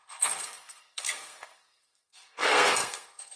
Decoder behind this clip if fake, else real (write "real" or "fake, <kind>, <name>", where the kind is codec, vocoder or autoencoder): fake, codec, SNAC